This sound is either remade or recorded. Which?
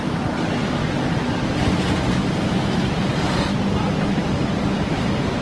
recorded